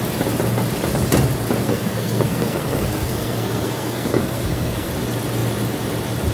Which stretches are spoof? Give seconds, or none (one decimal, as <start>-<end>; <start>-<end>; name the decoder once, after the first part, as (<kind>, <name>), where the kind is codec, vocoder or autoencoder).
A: 1.6-4.9 (codec, SNAC)